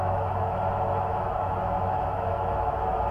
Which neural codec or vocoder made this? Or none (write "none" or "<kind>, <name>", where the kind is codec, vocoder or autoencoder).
autoencoder, DAC-VAE